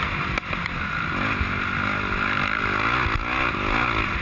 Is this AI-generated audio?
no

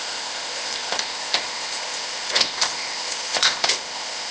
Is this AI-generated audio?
yes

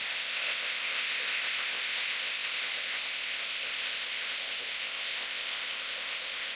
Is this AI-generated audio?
yes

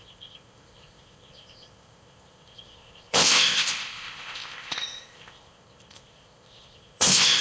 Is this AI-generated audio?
yes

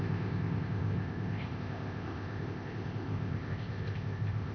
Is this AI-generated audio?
yes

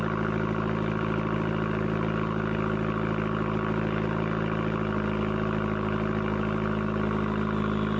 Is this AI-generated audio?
no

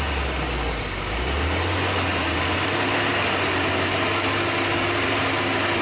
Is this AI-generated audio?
no